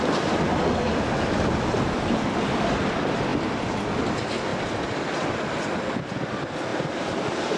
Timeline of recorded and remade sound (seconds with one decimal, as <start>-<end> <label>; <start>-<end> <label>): 0.0-4.5 recorded; 4.5-5.6 remade; 5.6-6.7 recorded; 6.7-7.6 remade